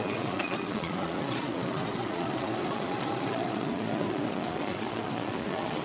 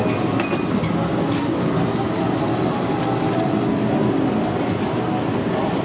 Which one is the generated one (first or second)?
first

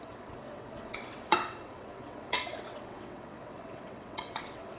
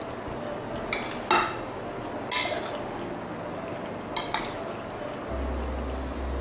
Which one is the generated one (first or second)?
first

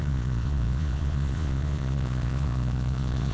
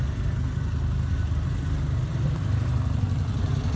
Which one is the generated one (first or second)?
first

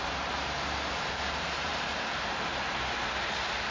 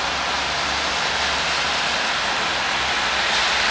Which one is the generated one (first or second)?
first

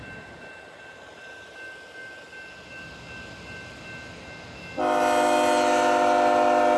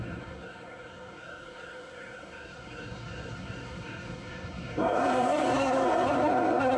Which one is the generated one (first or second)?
second